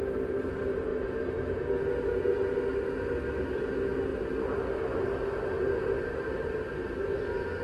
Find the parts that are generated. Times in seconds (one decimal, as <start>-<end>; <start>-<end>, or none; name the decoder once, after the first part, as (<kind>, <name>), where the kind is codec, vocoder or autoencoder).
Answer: none